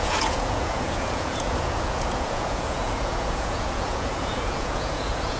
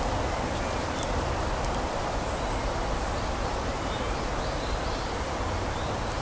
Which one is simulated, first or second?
first